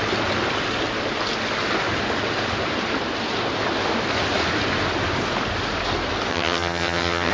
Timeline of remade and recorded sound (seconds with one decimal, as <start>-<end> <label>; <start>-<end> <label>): 0.0-6.3 recorded; 6.3-7.3 remade